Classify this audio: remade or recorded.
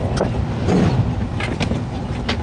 recorded